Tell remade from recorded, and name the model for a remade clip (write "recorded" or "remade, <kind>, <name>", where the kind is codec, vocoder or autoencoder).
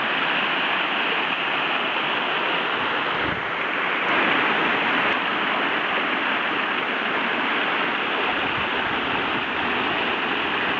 recorded